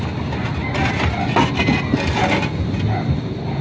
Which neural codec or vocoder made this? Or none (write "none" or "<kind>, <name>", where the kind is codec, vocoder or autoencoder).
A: none